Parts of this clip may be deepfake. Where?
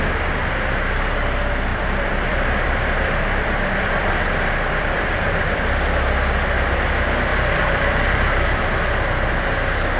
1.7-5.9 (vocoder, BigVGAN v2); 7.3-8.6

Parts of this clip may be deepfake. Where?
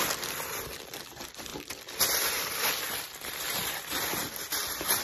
0.0-5.0 (vocoder, BigVGAN v2)